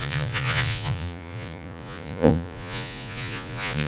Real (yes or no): no